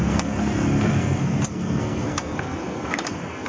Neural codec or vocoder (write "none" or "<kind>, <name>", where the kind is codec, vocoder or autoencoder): codec, SNAC